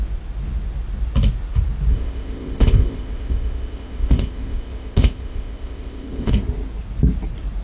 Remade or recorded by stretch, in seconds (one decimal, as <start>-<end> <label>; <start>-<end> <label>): 0.0-1.9 recorded; 1.9-6.3 remade; 6.3-7.6 recorded